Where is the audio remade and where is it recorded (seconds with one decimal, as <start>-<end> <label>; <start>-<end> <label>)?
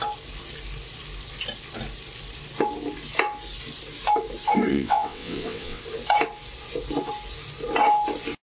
0.0-4.7 recorded; 4.7-5.8 remade; 5.8-8.5 recorded